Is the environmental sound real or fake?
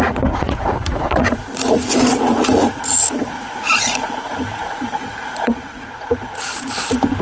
fake